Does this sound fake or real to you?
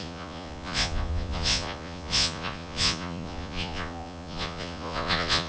fake